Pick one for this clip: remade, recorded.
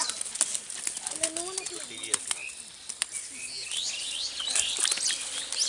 recorded